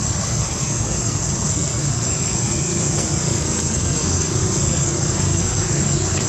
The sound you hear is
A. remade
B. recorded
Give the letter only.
A